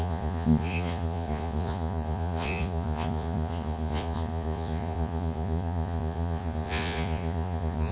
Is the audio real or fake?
fake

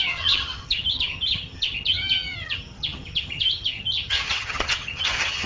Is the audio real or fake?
fake